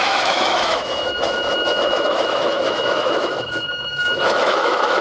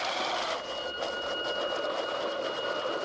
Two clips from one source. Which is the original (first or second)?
second